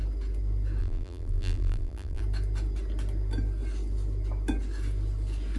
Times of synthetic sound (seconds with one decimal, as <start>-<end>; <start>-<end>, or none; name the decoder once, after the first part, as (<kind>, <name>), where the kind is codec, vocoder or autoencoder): 0.8-2.2 (vocoder, BigVGAN v2)